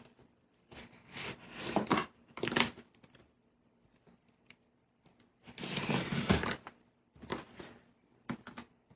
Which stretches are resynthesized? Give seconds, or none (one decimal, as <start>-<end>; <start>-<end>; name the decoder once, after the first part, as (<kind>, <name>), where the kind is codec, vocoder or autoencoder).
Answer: 2.0-3.3 (vocoder, BigVGAN v2)